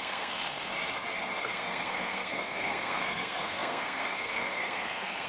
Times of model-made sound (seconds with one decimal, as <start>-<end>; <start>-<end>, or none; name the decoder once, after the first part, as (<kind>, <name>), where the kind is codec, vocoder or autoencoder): 0.0-0.7 (codec, SNAC); 1.4-5.3

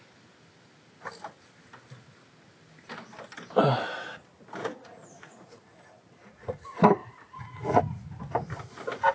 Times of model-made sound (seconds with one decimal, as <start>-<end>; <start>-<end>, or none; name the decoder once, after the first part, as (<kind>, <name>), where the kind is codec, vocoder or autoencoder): 4.6-5.6 (vocoder, Vocos); 7.0-7.8

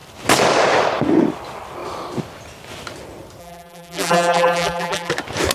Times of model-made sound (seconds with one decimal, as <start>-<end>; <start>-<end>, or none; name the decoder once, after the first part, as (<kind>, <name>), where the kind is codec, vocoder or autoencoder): 3.4-5.1 (vocoder, BigVGAN v2)

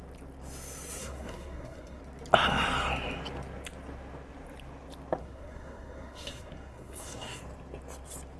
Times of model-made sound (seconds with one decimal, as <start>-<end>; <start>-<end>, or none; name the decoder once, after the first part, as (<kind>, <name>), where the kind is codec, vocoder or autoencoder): 1.0-2.0 (codec, SNAC); 5.2-7.4

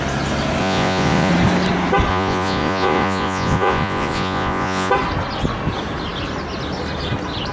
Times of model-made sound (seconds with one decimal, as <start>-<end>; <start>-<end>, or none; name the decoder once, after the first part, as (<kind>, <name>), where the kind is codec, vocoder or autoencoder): 0.6-1.3 (vocoder, Vocos); 2.1-4.9

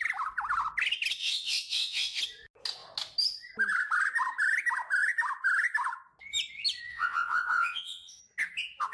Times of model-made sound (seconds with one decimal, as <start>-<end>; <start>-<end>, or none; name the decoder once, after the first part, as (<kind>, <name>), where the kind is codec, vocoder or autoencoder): 1.2-2.2 (vocoder, WaveNeXt); 6.9-8.2

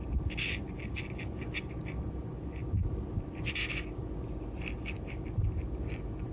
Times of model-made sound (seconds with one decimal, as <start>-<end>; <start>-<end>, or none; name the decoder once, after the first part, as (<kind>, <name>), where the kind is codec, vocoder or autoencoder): 3.6-4.1 (autoencoder, DAC-VAE)

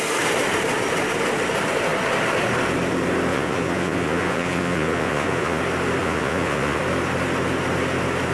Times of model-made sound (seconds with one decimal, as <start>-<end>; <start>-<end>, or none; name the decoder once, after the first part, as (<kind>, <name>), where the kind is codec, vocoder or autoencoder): 3.3-5.6 (vocoder, Vocos); 6.0-6.8